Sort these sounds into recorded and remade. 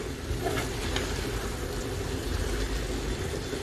recorded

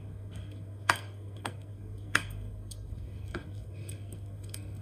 remade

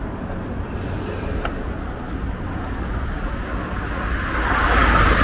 recorded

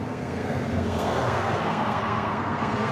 remade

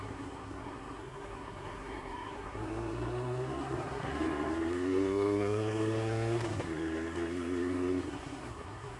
remade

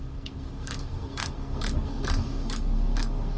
remade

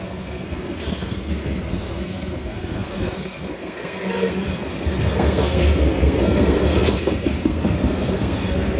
remade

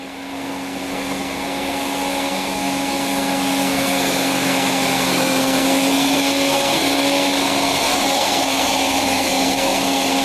remade